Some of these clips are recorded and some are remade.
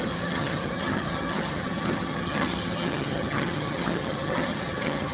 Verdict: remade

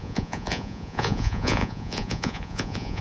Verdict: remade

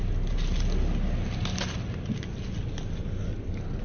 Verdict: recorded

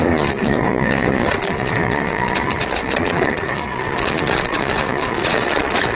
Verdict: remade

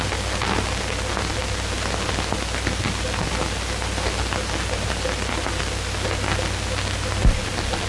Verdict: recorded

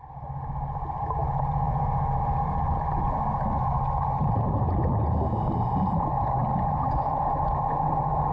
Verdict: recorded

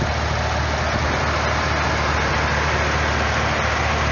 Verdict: recorded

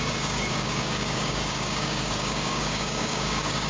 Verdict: remade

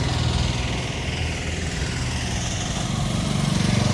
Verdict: recorded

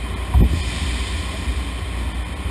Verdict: recorded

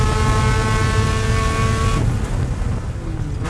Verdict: recorded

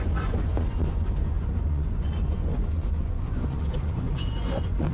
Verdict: remade